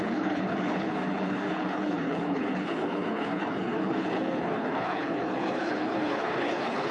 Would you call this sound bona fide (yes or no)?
no